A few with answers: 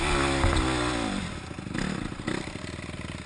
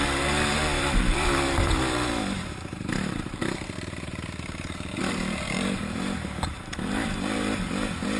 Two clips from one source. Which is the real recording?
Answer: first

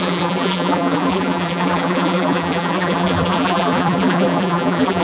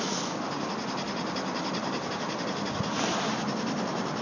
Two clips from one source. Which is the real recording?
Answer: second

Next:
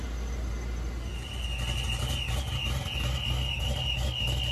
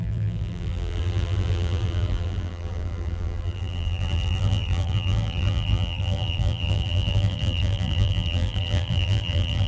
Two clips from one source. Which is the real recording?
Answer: first